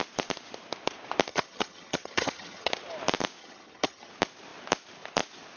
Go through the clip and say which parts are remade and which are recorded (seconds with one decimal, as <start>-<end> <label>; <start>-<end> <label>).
0.0-1.3 recorded; 1.3-2.7 remade; 2.7-3.4 recorded; 3.4-4.1 remade; 4.1-5.6 recorded